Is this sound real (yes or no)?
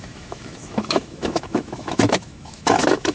no